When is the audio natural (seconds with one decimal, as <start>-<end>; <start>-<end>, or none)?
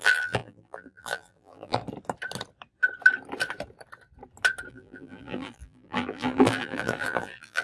1.8-4.7